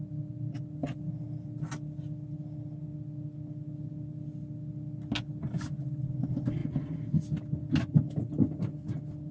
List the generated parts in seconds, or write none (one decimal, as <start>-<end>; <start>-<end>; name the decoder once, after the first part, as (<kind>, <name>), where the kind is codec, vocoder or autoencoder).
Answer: none